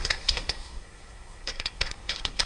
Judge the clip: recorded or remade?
remade